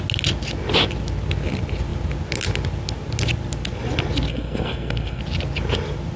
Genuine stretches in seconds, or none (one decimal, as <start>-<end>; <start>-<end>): 0.0-4.3; 5.2-6.2